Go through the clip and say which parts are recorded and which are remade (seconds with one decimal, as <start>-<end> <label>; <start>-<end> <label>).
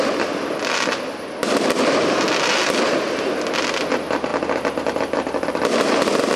0.0-6.4 recorded